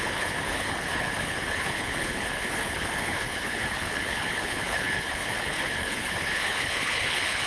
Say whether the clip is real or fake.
fake